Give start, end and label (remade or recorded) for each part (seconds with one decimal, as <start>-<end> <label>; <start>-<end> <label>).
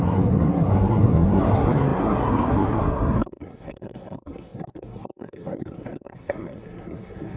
0.0-7.4 remade